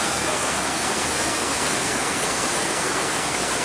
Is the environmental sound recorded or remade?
remade